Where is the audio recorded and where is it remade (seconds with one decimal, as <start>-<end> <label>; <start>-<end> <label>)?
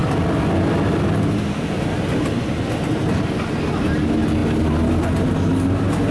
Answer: 0.0-6.1 recorded